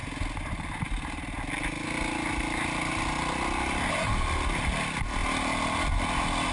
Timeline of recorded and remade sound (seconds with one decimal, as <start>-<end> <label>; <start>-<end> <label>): 0.0-6.5 recorded